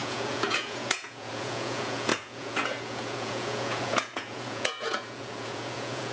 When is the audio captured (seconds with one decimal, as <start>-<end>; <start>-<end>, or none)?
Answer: none